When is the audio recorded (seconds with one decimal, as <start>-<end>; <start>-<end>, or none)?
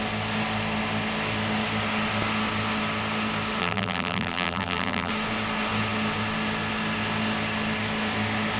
0.0-3.6; 5.1-8.6